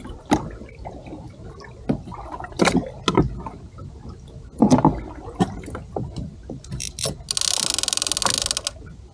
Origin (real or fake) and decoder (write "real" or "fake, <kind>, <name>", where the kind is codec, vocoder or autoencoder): real